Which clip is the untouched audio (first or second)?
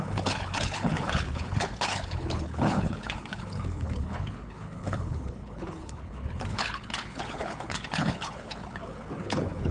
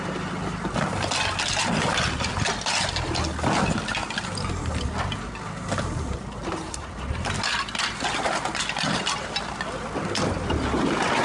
second